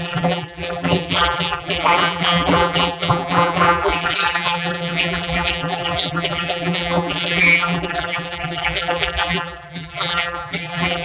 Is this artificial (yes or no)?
yes